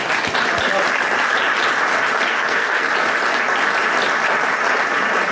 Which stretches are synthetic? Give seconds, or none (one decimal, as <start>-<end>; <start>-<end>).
2.3-2.9